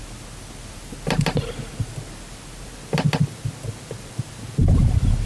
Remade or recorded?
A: recorded